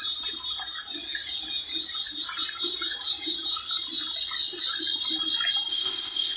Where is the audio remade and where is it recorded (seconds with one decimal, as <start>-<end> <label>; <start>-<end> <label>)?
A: 0.0-5.7 recorded; 5.7-6.4 remade